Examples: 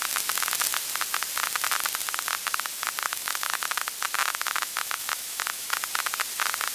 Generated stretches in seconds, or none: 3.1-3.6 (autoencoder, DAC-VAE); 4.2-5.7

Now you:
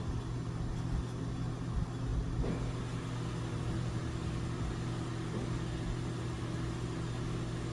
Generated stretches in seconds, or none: none

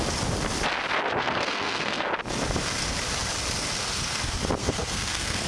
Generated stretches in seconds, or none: 1.2-2.1 (codec, SNAC); 4.6-5.5

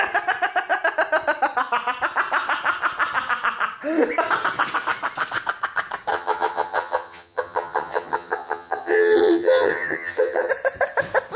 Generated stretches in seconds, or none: 6.1-10.5 (vocoder, HiFi-GAN)

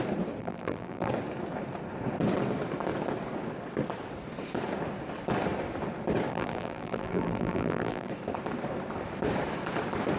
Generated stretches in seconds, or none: 0.4-1.1 (vocoder, BigVGAN v2); 6.3-8.1

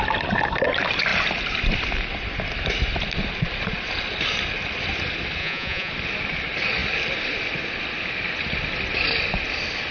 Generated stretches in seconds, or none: 5.4-5.9 (vocoder, Vocos)

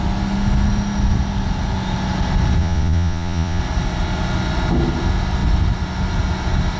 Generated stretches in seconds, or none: 2.6-3.6 (vocoder, Vocos)

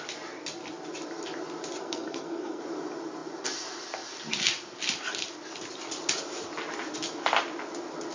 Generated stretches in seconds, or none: 1.8-2.6 (codec, SNAC)